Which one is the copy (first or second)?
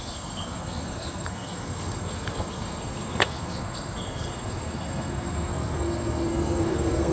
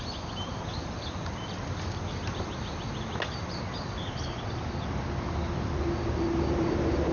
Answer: first